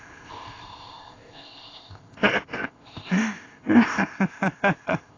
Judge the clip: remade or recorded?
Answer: remade